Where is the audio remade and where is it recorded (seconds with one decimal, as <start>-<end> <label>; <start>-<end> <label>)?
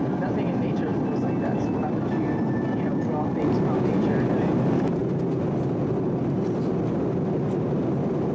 0.0-8.3 recorded